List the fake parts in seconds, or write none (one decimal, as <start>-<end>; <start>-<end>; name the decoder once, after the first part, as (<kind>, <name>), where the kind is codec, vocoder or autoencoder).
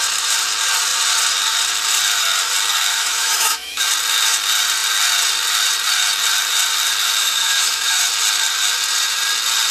2.9-3.9 (autoencoder, DAC-VAE); 7.2-8.0